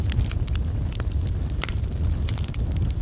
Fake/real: real